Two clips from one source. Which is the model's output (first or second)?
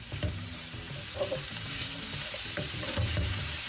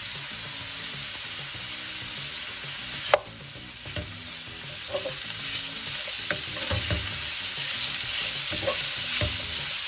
first